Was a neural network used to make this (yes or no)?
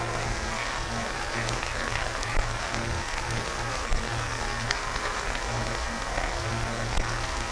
yes